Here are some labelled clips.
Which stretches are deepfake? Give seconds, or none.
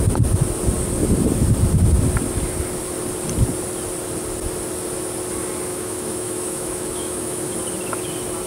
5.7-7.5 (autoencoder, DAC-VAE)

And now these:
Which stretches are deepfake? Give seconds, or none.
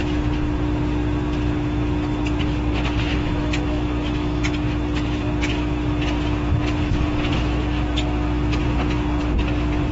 3.1-4.4 (autoencoder, DAC-VAE)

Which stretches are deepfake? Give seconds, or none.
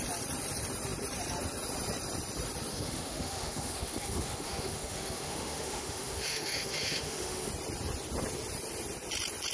2.7-7.5 (autoencoder, DAC-VAE)